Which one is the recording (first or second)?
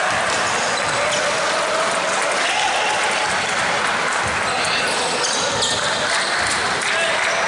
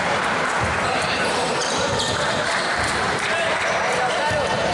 first